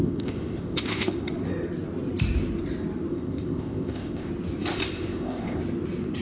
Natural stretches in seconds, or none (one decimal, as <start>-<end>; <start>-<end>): 1.3-3.1; 4.3-4.8; 5.6-6.2